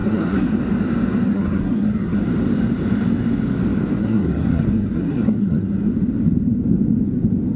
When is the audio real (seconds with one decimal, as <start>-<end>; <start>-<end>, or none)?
0.6-1.3; 2.2-4.0; 5.9-7.6